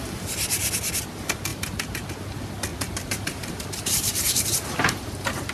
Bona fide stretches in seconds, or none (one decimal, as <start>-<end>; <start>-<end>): 0.0-1.5; 2.1-2.7